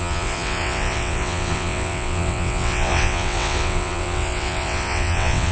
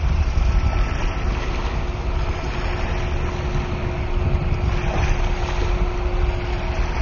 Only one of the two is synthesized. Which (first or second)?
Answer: first